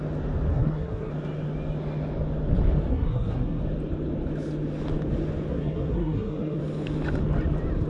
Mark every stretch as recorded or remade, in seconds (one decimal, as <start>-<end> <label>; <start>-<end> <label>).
0.0-0.5 recorded; 0.5-1.1 remade; 1.1-2.9 recorded; 2.9-3.6 remade; 3.6-5.5 recorded; 5.5-6.6 remade; 6.6-7.9 recorded